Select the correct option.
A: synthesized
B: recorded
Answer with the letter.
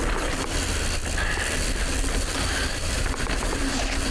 B